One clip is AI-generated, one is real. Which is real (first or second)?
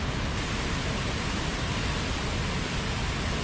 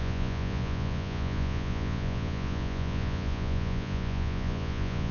first